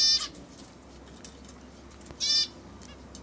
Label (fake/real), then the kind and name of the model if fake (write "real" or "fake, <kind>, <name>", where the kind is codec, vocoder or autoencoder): real